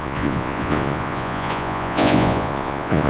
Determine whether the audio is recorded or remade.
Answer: remade